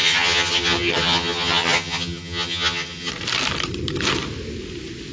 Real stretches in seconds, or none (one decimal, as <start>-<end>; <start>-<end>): 3.1-5.1